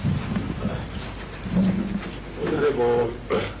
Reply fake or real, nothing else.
real